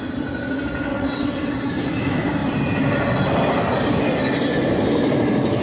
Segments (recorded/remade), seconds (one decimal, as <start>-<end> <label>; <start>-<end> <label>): 0.0-0.9 recorded; 0.9-1.5 remade; 1.5-5.6 recorded